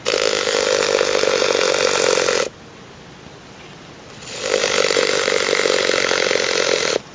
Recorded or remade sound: recorded